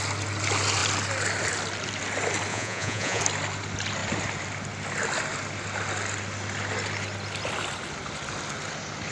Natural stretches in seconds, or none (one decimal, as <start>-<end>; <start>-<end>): 0.0-2.5; 3.2-9.1

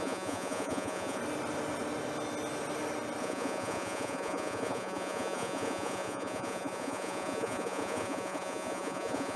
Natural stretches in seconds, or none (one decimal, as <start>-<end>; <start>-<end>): 1.2-3.2